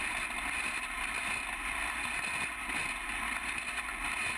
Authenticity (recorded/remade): recorded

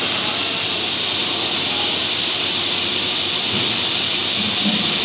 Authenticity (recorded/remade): recorded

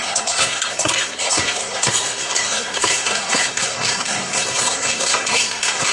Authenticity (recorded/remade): remade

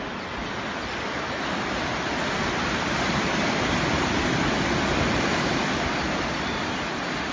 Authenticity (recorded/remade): recorded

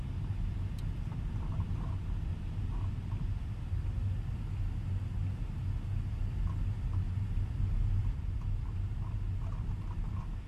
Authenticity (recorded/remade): recorded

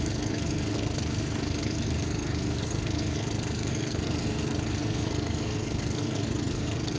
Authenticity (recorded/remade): remade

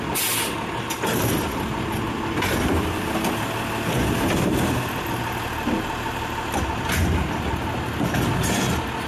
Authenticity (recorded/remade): recorded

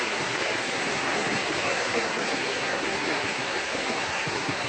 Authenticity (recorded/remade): remade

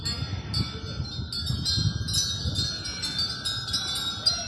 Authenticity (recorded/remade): recorded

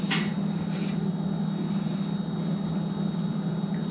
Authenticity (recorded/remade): recorded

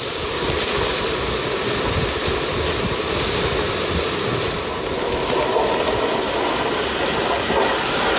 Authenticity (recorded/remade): recorded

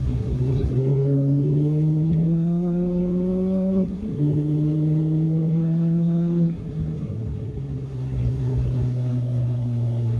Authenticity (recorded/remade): remade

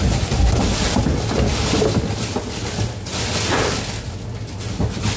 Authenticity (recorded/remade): recorded